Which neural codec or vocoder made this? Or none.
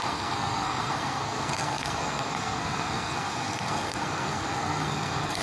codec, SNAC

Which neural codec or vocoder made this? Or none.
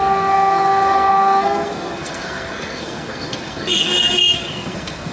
codec, SNAC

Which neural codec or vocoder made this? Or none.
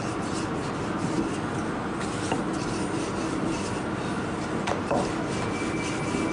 none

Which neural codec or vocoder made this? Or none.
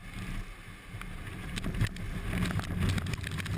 none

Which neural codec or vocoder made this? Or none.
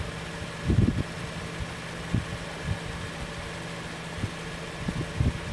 none